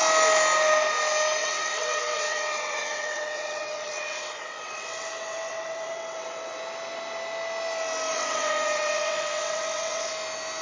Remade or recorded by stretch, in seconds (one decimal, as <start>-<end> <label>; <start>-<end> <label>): 0.0-1.4 recorded; 1.4-6.6 remade; 6.6-8.1 recorded; 8.1-10.1 remade; 10.1-10.6 recorded